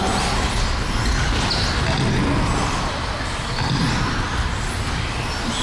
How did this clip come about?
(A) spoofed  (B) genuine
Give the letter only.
B